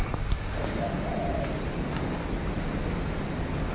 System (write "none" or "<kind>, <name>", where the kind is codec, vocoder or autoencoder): none